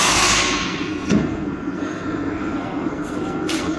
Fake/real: fake